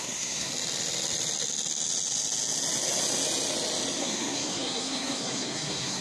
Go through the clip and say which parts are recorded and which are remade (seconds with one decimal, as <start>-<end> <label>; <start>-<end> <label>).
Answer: 0.0-0.5 remade; 0.5-4.0 recorded; 4.0-6.0 remade